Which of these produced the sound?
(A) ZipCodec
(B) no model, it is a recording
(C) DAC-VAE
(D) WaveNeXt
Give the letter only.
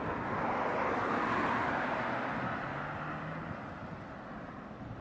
B